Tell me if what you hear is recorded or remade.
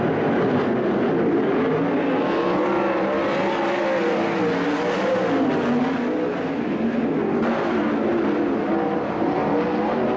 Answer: recorded